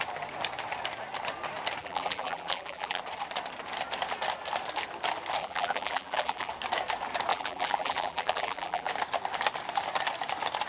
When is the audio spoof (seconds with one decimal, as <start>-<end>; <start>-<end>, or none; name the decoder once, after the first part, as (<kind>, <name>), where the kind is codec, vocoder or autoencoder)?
1.8-3.0 (vocoder, BigVGAN v2); 5.4-6.5; 7.3-8.9